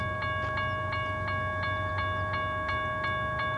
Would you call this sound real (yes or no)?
yes